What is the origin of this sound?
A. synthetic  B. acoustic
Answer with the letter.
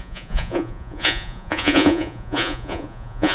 A